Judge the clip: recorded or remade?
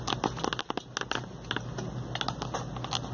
recorded